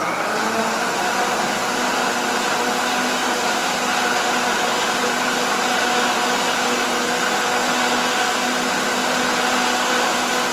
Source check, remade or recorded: recorded